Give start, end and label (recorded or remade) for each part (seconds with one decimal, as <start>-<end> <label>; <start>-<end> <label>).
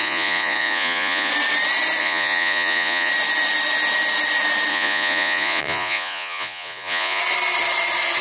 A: 0.0-1.3 remade; 1.3-2.0 recorded; 2.0-3.1 remade; 3.1-4.7 recorded; 4.7-7.2 remade; 7.2-8.2 recorded